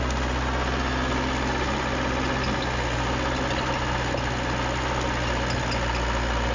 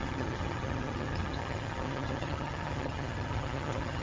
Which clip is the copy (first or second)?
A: second